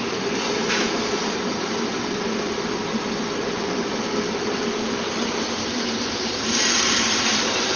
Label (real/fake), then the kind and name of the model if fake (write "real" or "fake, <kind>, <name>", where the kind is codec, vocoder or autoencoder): fake, vocoder, BigVGAN v2